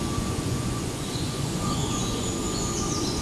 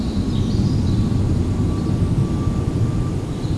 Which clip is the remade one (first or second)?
first